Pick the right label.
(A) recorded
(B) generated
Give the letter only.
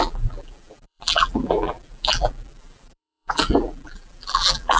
B